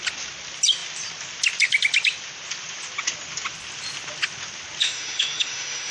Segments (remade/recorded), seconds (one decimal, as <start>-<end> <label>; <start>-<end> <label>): 0.0-4.8 recorded; 4.8-5.9 remade